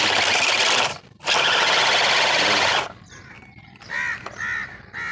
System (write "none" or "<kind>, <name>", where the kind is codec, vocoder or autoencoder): vocoder, BigVGAN v2